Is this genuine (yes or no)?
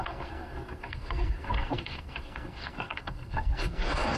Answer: no